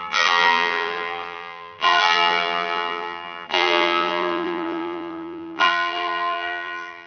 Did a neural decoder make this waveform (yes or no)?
yes